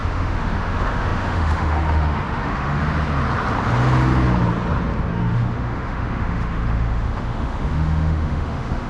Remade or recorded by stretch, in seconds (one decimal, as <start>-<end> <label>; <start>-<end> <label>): 0.0-2.8 remade; 2.8-5.1 recorded; 5.1-8.9 remade